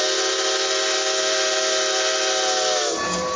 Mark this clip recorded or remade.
recorded